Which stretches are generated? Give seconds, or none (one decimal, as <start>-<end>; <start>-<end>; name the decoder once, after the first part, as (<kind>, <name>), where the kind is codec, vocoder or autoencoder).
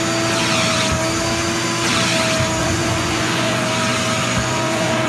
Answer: 2.6-3.7 (vocoder, Vocos); 4.2-5.1